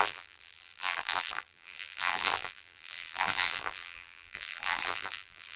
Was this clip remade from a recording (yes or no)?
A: yes